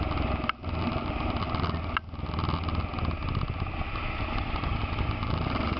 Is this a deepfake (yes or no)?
no